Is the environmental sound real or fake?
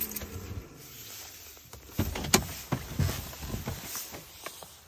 real